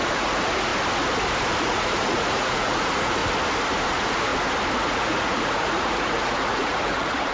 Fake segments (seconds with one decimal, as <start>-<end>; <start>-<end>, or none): 0.0-0.7; 1.6-3.2; 3.9-4.3; 4.8-7.3